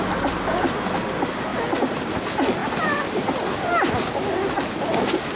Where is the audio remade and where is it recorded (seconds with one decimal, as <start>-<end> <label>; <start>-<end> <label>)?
0.0-5.4 recorded